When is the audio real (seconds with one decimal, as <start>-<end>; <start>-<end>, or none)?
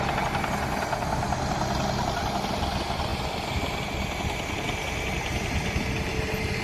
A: 0.0-6.6